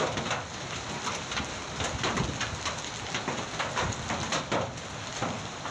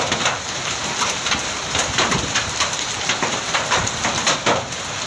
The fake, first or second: second